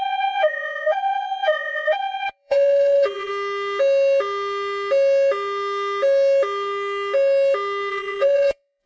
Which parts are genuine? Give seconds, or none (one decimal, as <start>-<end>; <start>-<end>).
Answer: 3.3-7.9